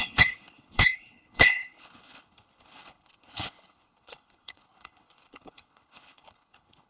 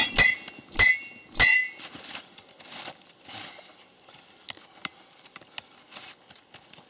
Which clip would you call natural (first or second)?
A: second